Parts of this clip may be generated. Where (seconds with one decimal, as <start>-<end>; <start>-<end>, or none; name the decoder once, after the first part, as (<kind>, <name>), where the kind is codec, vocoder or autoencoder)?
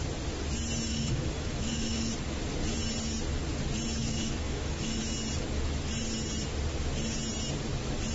0.9-2.1 (autoencoder, DAC-VAE); 4.0-5.0